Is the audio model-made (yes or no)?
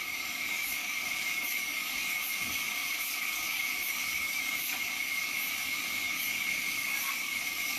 yes